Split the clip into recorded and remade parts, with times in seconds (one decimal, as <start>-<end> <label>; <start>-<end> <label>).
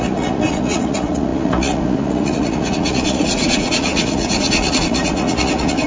0.0-5.9 remade